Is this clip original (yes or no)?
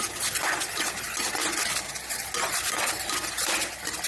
yes